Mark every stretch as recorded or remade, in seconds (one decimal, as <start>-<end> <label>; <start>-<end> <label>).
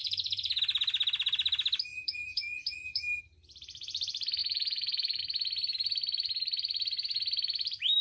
0.0-0.6 remade; 0.6-1.9 recorded; 1.9-3.2 remade; 3.2-4.4 recorded; 4.4-5.2 remade; 5.2-8.0 recorded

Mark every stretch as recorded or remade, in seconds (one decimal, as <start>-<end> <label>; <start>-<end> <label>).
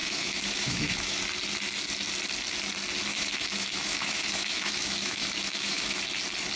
0.0-1.2 remade; 1.2-3.1 recorded; 3.1-6.0 remade; 6.0-6.6 recorded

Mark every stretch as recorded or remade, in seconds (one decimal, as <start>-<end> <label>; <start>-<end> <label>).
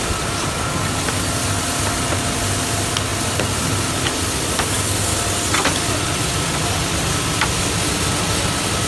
0.0-8.9 recorded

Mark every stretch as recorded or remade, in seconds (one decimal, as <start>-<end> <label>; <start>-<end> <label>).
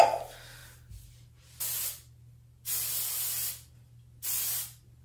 0.0-5.0 recorded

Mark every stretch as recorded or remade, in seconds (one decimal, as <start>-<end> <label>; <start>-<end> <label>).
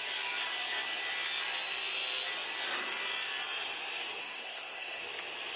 0.0-4.2 recorded; 4.2-5.0 remade; 5.0-5.6 recorded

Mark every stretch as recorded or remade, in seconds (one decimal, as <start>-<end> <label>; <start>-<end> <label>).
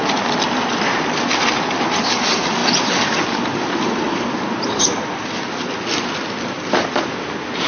0.0-7.7 recorded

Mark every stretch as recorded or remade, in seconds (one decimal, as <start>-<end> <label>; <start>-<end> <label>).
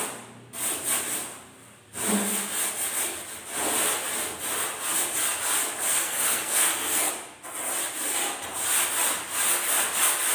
0.0-5.9 recorded; 5.9-7.1 remade; 7.1-10.3 recorded